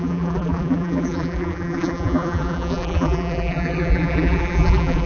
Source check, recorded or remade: remade